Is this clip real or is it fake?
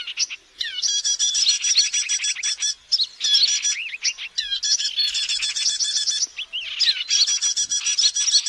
real